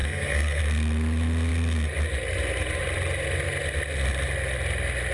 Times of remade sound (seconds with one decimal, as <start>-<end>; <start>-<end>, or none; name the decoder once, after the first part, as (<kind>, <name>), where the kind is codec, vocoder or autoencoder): 0.0-0.6 (codec, SNAC)